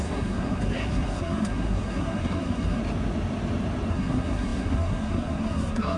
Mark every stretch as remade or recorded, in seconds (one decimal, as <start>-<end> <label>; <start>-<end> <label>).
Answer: 0.0-2.8 remade; 2.8-3.9 recorded; 3.9-6.0 remade